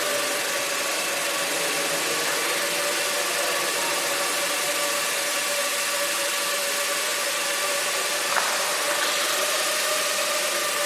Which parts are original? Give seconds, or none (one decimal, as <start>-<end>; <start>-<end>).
0.0-10.9

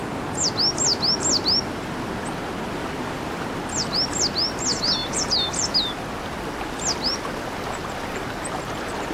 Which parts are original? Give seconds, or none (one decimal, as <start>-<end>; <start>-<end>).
0.0-9.1

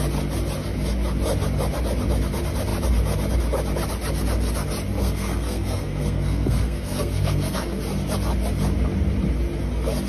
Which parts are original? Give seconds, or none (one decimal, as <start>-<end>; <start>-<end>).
0.0-5.0; 7.8-10.1

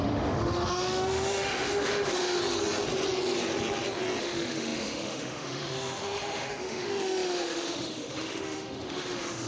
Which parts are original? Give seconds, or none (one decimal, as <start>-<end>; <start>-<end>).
2.4-4.2